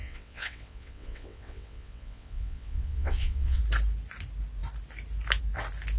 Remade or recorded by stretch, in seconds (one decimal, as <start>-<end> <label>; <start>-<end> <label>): 0.0-3.6 remade; 3.6-6.0 recorded